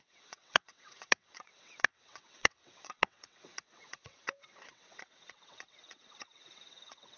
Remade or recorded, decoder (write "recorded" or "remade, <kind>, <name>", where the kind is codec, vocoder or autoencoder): remade, vocoder, WaveNeXt